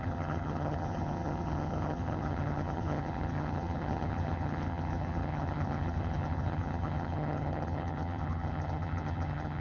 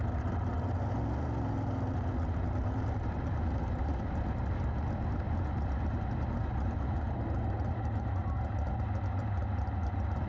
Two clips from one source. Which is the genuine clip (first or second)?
second